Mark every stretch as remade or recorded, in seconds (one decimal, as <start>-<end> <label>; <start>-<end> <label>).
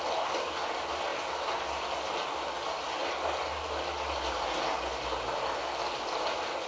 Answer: 0.0-6.7 recorded